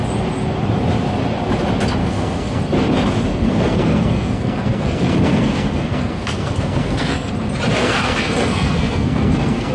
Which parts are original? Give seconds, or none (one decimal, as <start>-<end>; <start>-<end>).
0.0-2.0; 2.6-3.3; 7.3-7.8